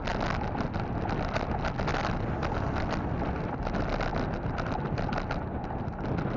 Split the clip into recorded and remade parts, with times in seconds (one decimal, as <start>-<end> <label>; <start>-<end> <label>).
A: 0.0-6.4 recorded